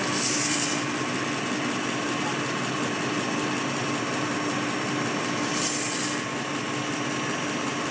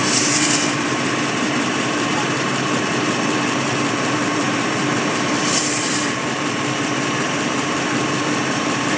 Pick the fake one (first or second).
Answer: second